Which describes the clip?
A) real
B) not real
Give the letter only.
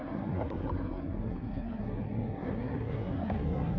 B